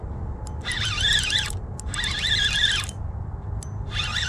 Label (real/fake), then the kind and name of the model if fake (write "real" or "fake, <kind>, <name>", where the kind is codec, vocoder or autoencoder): real